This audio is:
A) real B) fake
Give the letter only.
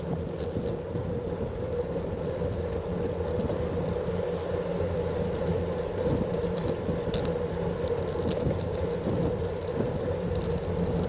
A